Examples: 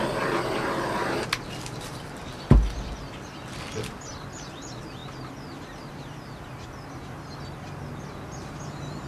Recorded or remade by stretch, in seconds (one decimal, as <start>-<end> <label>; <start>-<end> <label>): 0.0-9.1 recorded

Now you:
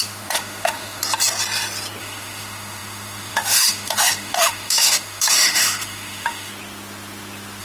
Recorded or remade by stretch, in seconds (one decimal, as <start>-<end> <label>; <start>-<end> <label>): 0.0-1.0 remade; 1.0-2.0 recorded; 2.0-6.5 remade; 6.5-7.6 recorded

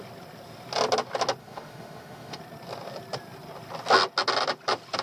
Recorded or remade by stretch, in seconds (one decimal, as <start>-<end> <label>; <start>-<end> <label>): 0.0-1.4 recorded; 1.4-2.4 remade; 2.4-5.0 recorded

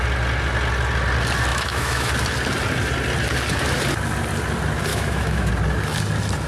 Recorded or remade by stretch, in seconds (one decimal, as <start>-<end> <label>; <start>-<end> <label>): 0.0-1.5 recorded; 1.5-2.1 remade; 2.1-4.9 recorded; 4.9-5.5 remade; 5.5-6.5 recorded

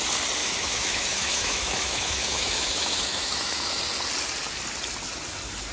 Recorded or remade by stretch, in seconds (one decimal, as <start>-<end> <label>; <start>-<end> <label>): 0.0-0.4 recorded; 0.4-3.8 remade; 3.8-5.7 recorded

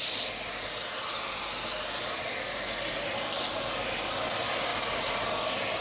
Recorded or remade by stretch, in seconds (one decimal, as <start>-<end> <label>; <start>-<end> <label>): 0.0-5.8 recorded

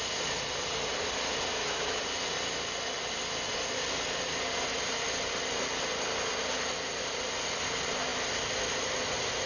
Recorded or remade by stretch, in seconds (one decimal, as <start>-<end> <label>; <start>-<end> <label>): 0.0-1.5 recorded; 1.5-2.0 remade; 2.0-9.5 recorded

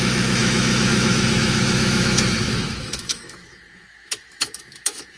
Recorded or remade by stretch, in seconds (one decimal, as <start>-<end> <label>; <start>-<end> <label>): 0.0-5.2 remade